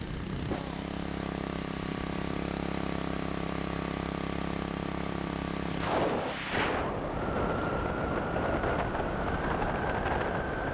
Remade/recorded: recorded